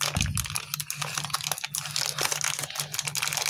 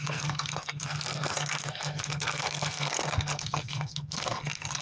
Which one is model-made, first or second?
second